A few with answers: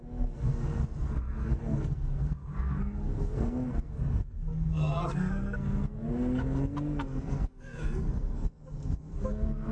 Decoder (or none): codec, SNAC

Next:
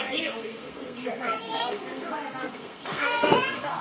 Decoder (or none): codec, SNAC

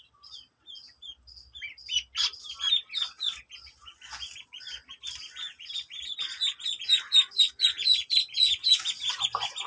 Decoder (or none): none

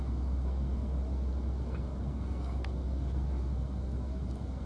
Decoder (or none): codec, SNAC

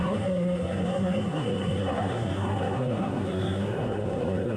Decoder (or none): codec, SNAC